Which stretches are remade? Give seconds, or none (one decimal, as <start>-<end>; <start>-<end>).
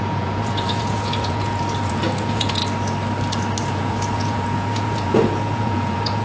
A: 0.0-2.6; 3.7-6.2